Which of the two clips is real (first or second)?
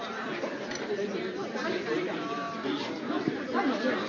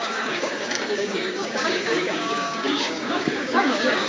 first